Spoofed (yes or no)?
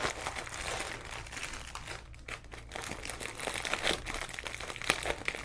no